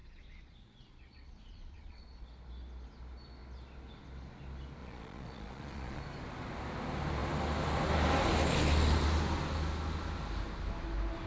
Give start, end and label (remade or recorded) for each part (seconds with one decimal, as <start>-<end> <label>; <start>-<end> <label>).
0.0-2.3 remade; 2.3-4.8 recorded; 4.8-6.0 remade; 6.0-11.3 recorded